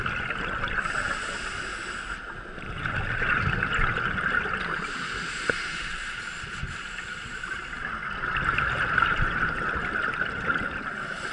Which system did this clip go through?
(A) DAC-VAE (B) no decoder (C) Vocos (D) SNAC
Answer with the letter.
B